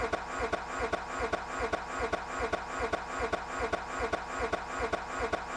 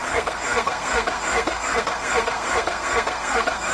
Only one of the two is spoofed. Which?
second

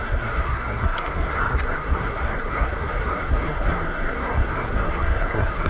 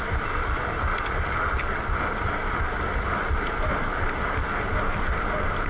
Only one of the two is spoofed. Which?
first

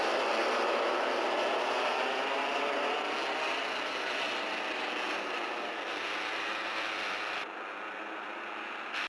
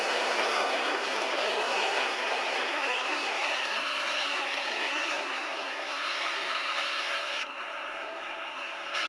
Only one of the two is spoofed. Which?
second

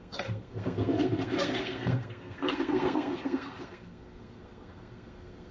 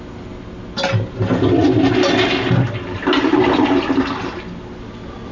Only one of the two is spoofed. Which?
first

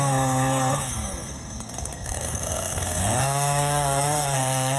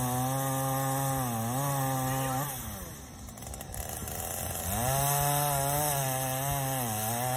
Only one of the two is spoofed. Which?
first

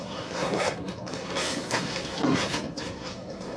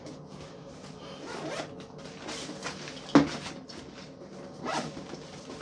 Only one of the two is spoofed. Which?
first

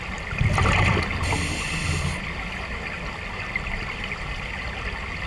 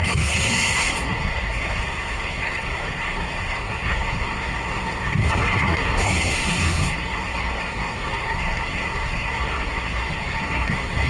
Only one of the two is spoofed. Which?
second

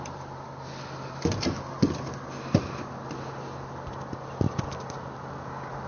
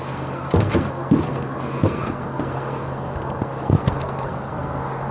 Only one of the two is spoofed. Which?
second